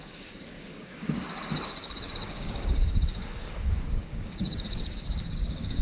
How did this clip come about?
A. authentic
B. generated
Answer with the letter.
B